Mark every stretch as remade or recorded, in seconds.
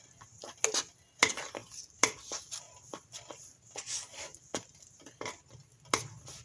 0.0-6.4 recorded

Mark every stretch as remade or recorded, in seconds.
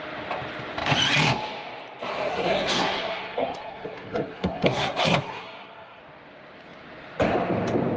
0.0-2.3 recorded; 2.3-6.0 remade; 6.0-8.0 recorded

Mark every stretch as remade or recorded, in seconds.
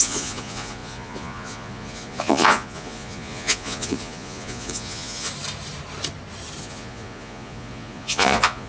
0.0-5.3 remade; 5.3-6.6 recorded; 6.6-8.7 remade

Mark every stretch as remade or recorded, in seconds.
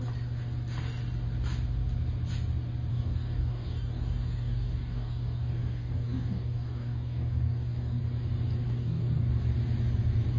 0.0-2.9 recorded; 2.9-8.0 remade; 8.0-8.8 recorded; 8.8-9.3 remade; 9.3-10.4 recorded